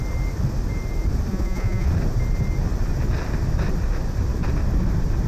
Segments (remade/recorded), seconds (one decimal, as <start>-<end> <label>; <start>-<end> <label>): 0.0-1.3 recorded; 1.3-1.9 remade; 1.9-5.3 recorded

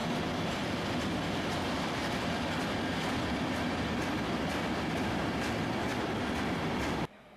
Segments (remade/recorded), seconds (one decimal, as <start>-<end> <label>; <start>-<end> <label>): 0.0-7.4 recorded

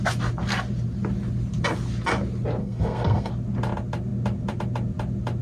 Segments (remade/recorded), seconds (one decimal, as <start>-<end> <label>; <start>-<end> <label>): 0.0-2.6 recorded; 2.6-3.3 remade; 3.3-5.4 recorded